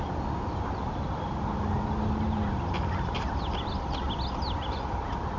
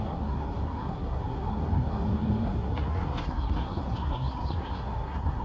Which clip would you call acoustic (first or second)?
first